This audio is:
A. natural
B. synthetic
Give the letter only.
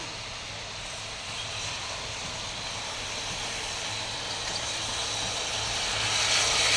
B